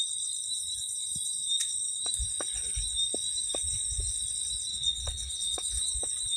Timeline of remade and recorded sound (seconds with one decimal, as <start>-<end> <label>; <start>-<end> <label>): 0.0-4.7 recorded; 4.7-5.9 remade; 5.9-6.4 recorded